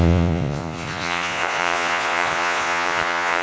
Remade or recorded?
remade